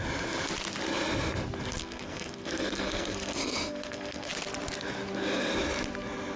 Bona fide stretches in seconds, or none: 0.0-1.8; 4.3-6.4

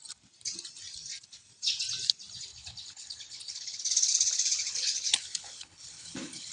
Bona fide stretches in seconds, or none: 0.0-2.5

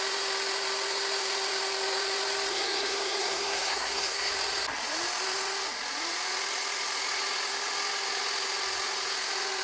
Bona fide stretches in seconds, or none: 0.0-2.5; 4.3-9.6